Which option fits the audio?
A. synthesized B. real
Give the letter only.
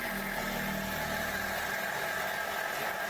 B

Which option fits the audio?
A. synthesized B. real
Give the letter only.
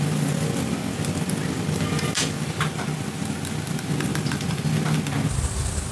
B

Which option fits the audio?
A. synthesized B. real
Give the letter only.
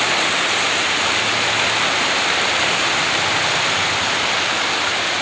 B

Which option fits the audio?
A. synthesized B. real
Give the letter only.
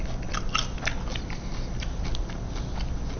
B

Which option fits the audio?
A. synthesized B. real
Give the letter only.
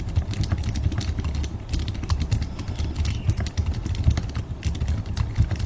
B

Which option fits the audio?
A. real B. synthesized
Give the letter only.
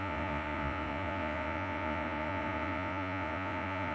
B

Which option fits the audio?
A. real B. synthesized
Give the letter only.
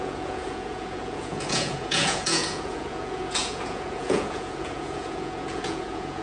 B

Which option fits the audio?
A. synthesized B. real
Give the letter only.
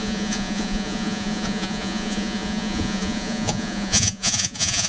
A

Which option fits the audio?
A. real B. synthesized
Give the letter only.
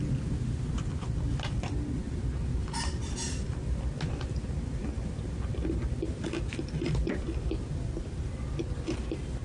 A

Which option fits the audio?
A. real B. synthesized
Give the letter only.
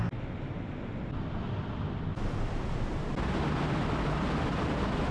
A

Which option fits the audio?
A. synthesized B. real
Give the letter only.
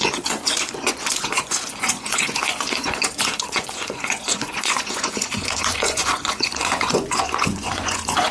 A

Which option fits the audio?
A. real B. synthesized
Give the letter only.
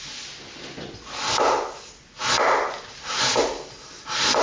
A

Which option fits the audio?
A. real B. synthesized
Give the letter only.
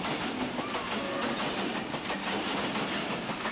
A